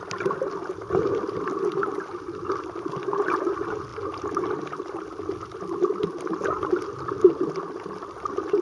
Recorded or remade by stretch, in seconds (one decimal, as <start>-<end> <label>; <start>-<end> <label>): 0.0-8.6 recorded